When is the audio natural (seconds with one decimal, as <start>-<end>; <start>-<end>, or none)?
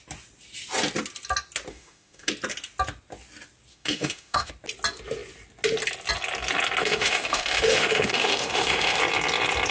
0.0-1.7; 2.3-3.7; 4.5-6.8; 9.0-9.7